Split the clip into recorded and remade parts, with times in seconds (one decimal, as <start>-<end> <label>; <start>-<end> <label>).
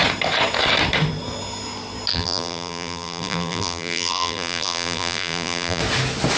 0.0-2.1 recorded; 2.1-5.8 remade; 5.8-6.4 recorded